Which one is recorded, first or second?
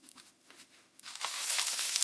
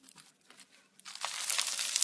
second